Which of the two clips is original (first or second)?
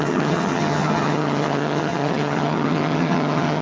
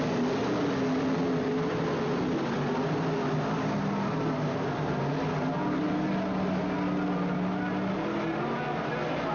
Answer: second